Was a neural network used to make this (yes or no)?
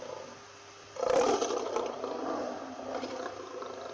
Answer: no